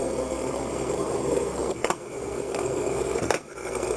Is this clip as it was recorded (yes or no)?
no